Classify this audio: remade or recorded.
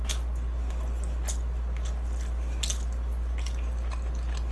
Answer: recorded